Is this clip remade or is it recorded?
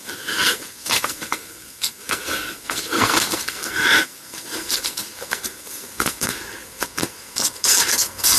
remade